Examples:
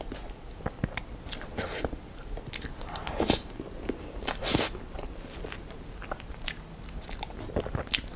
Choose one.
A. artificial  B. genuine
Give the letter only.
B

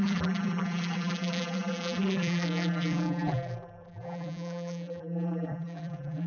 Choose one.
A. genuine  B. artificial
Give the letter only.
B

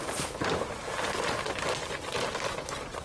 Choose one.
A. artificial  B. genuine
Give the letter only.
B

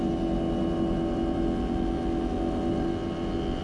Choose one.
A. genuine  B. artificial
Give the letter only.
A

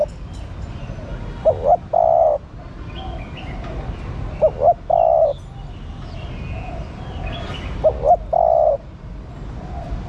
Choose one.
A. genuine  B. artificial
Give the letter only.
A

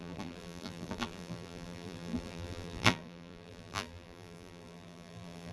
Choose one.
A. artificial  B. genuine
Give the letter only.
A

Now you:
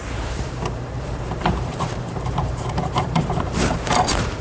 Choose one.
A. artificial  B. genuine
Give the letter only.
A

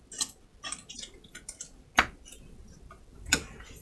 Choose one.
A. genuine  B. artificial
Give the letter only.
A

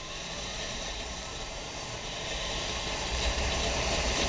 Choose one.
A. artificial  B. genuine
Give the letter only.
A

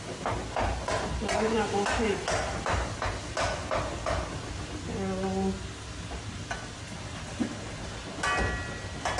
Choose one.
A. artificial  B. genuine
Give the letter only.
B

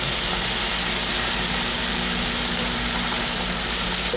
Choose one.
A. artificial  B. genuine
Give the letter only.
B